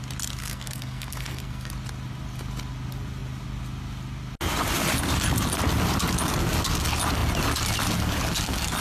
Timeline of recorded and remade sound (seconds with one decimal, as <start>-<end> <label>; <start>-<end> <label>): 0.0-0.4 recorded; 0.4-1.7 remade; 1.7-8.8 recorded